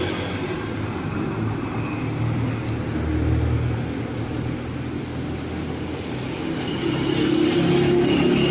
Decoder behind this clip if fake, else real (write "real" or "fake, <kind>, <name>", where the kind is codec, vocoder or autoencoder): real